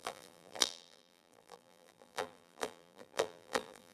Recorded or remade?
remade